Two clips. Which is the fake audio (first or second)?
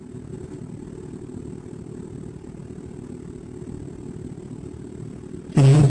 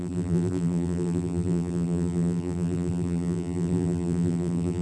second